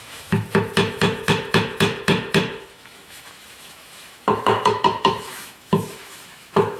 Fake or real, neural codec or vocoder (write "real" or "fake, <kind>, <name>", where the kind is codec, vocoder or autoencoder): fake, autoencoder, DAC-VAE